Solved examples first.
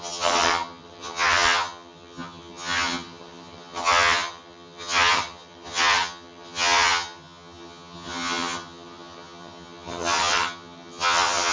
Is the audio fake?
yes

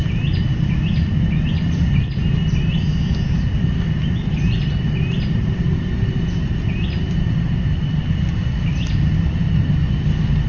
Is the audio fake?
no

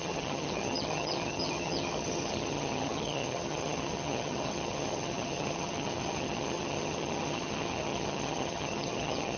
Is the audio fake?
yes